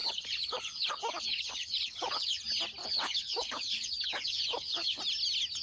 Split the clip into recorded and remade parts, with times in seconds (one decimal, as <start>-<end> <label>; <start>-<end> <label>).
0.0-2.4 remade; 2.4-2.8 recorded; 2.8-5.0 remade; 5.0-5.6 recorded